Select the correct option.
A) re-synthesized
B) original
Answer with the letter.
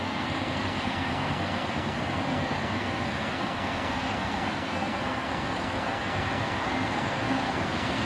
A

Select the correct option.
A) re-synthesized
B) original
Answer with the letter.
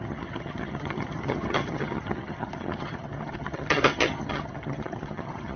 A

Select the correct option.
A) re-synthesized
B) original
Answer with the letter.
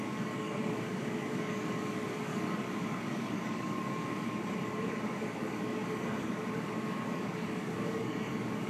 A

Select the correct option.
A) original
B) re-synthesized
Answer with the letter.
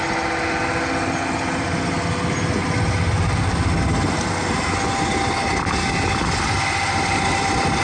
A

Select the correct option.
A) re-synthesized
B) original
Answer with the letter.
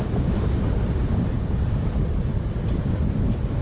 A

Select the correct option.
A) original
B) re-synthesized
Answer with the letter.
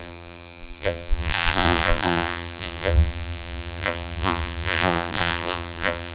B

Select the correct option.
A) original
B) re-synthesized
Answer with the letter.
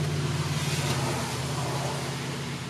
A